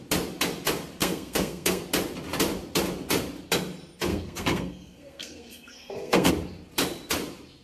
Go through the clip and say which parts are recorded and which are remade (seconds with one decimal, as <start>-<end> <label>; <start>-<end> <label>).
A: 0.0-1.0 recorded; 1.0-1.8 remade; 1.8-4.1 recorded; 4.1-6.3 remade; 6.3-7.6 recorded